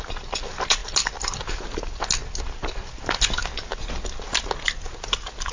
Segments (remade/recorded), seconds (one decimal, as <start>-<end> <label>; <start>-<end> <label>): 0.0-5.5 recorded